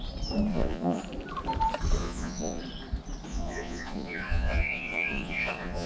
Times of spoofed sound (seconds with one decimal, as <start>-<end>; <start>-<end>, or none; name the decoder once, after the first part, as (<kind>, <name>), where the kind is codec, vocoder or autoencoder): 0.5-1.0 (vocoder, Vocos); 2.0-2.6; 3.3-5.9